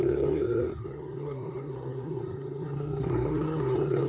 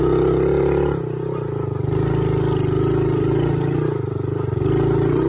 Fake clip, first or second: first